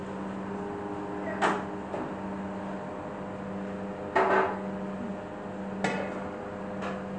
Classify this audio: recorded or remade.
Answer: recorded